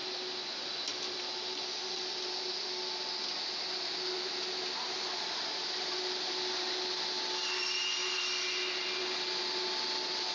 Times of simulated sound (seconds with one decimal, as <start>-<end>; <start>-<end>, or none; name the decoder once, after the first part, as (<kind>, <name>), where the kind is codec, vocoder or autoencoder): none